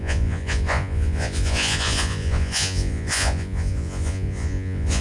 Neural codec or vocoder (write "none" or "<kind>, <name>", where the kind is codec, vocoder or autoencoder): vocoder, Vocos